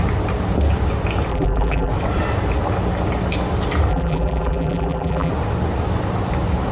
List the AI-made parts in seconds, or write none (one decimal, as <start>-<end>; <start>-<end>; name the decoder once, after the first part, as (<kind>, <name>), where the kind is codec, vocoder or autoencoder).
1.3-1.9 (vocoder, BigVGAN v2); 3.9-5.3